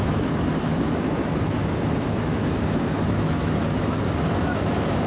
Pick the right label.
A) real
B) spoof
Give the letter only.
B